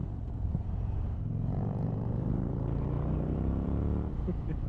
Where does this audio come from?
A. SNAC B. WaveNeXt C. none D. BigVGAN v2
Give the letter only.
D